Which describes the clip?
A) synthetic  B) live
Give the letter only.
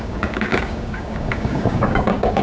A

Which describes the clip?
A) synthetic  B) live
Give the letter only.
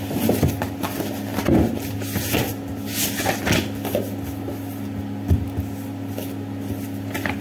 B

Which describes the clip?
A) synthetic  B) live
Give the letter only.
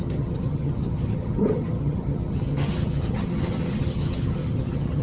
A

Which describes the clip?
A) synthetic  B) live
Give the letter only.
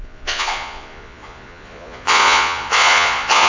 A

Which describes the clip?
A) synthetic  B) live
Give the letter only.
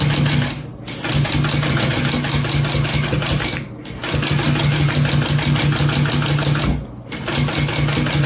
B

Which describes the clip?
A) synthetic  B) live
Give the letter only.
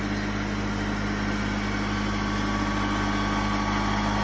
B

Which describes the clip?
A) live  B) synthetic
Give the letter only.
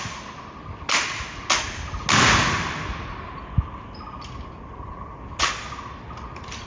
A